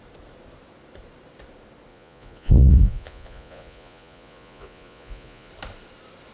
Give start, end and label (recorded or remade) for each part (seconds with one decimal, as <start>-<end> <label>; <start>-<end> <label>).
0.0-1.9 recorded; 1.9-5.5 remade; 5.5-6.3 recorded